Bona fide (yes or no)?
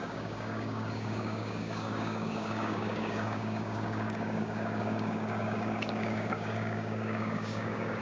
no